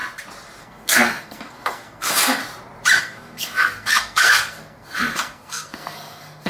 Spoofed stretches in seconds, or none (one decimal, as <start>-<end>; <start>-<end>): 0.6-2.4; 3.0-6.5